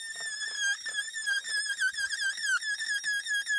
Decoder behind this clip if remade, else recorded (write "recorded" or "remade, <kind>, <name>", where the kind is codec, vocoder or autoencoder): recorded